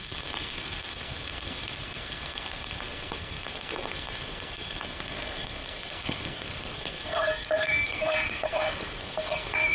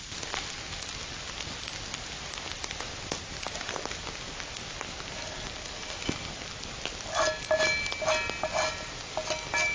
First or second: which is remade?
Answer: first